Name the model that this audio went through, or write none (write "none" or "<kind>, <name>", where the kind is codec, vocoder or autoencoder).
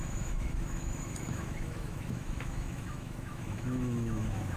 autoencoder, DAC-VAE